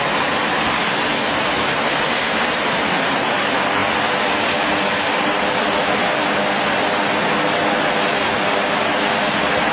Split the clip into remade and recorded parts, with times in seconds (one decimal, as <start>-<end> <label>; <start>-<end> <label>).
0.0-9.7 recorded